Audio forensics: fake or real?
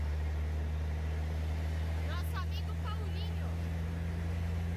real